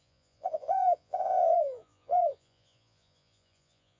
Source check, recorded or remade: remade